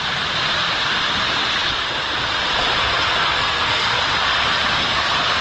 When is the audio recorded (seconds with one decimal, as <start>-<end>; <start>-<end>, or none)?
0.0-3.2; 4.0-5.4